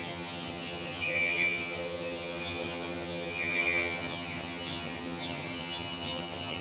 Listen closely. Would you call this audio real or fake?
fake